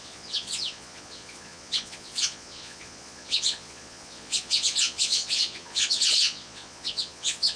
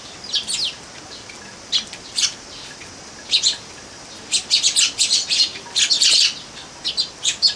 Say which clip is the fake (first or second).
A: first